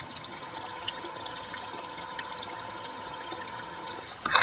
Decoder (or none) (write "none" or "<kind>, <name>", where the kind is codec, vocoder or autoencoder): vocoder, HiFi-GAN